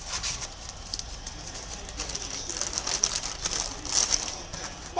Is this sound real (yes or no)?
yes